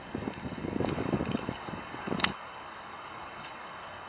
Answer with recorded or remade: remade